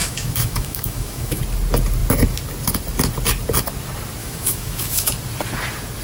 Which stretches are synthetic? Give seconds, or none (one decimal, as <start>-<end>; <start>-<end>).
0.0-1.4; 4.2-5.1